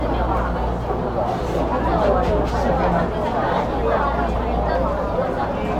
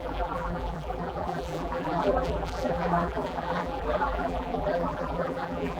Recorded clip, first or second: first